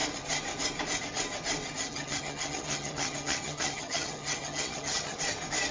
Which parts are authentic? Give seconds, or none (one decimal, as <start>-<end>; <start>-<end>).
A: 0.0-1.8; 5.2-5.7